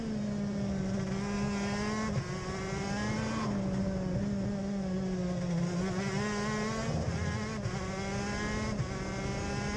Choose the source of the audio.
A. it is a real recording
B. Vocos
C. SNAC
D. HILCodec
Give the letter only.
A